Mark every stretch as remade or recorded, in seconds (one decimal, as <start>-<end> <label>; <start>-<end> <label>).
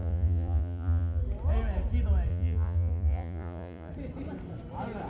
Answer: 0.0-1.2 remade; 1.2-2.3 recorded; 2.3-3.9 remade; 3.9-5.1 recorded